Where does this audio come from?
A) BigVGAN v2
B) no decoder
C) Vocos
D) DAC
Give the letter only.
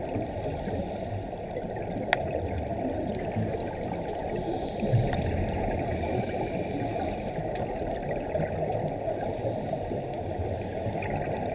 B